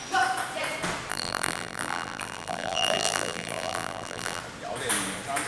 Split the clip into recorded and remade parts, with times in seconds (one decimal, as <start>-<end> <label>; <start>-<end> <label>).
0.0-1.1 recorded; 1.1-4.4 remade; 4.4-5.5 recorded